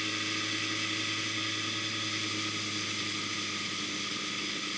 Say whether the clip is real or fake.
real